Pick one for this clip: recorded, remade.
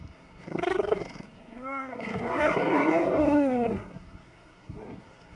remade